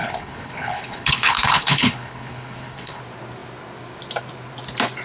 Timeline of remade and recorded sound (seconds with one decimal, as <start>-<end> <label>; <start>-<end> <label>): 0.0-3.0 remade; 3.0-5.0 recorded